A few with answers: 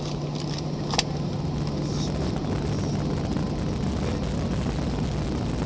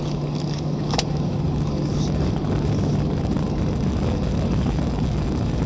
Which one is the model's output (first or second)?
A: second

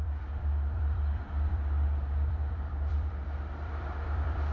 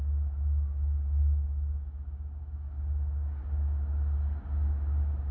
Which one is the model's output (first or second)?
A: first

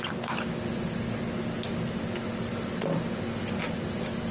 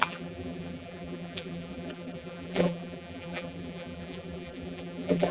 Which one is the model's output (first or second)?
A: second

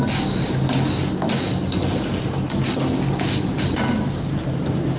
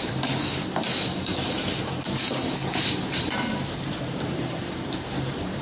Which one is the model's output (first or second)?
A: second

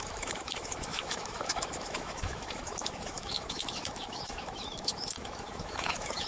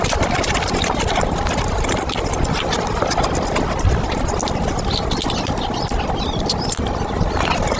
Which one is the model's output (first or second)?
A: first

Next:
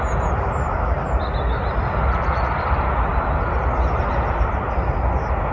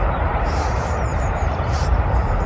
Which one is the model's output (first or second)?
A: second